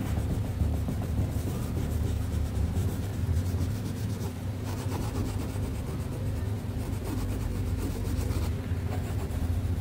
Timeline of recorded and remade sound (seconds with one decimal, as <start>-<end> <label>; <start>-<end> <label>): 0.0-5.2 remade; 5.2-6.8 recorded; 6.8-9.8 remade